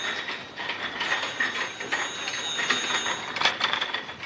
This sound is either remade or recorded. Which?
recorded